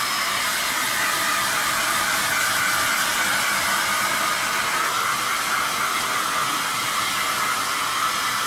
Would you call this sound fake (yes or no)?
no